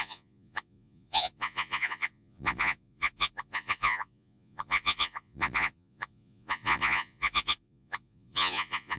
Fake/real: fake